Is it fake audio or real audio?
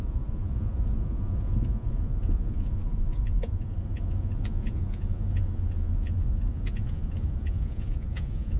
fake